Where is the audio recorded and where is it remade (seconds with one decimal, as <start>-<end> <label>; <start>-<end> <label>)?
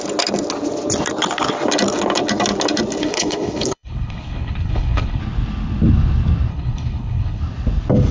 0.0-3.0 recorded; 3.0-5.2 remade; 5.2-6.5 recorded; 6.5-7.4 remade; 7.4-8.1 recorded